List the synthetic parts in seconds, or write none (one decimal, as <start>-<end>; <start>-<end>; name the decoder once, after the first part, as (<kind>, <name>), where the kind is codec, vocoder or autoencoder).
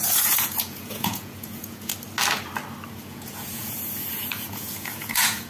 0.0-1.9 (vocoder, Vocos); 2.9-5.5